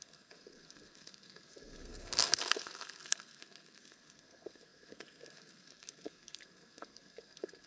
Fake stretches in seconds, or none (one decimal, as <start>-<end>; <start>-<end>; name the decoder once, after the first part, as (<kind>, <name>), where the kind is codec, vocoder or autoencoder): 0.0-7.7 (codec, SNAC)